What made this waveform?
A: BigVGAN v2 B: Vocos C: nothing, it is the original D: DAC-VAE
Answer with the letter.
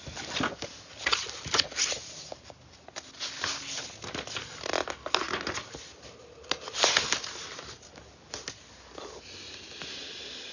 C